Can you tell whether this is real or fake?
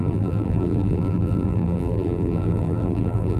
fake